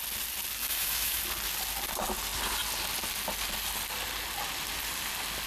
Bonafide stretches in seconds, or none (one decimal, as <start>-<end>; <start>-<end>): 0.0-0.6; 1.2-5.5